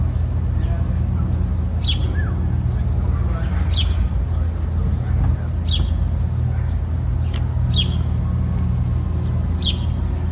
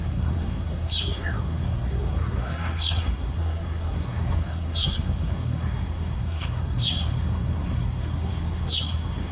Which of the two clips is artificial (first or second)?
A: second